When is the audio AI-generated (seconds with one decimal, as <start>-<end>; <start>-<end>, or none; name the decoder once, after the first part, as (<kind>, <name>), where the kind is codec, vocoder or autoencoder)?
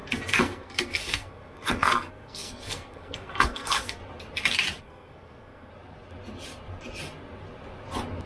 0.0-4.0 (codec, SNAC); 4.8-5.7